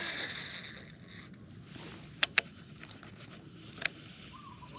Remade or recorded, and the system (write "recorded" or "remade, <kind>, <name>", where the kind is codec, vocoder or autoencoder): recorded